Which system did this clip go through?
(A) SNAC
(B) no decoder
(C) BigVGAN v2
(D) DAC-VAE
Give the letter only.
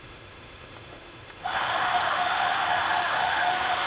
D